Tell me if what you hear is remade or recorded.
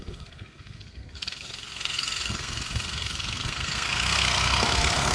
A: remade